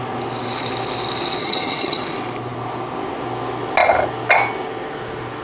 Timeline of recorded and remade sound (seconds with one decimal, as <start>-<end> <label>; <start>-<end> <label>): 0.0-1.4 recorded; 1.4-2.0 remade; 2.0-5.4 recorded